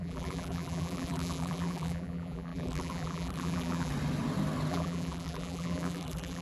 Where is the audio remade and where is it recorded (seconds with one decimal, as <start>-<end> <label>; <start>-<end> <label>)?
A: 0.0-3.9 remade; 3.9-4.7 recorded; 4.7-6.4 remade